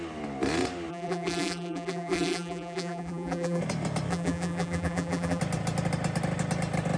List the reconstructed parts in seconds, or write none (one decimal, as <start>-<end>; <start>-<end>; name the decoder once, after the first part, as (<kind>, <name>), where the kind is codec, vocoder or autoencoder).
0.9-3.6 (vocoder, BigVGAN v2); 4.1-5.4